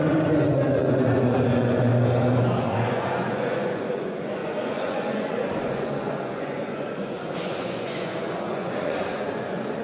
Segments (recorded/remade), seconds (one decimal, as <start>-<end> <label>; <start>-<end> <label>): 0.0-1.9 remade; 1.9-2.4 recorded; 2.4-9.8 remade